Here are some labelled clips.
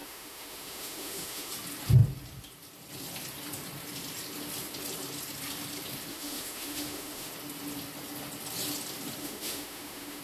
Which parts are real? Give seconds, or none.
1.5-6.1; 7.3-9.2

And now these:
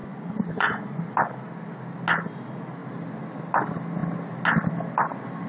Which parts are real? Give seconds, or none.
1.0-5.5

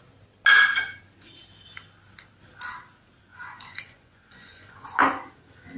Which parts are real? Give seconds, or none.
0.0-3.3; 5.0-5.8

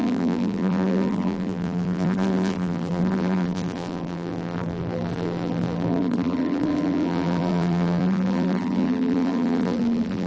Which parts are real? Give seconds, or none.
none

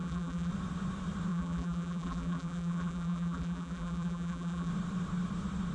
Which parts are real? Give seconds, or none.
0.5-1.3; 4.7-5.7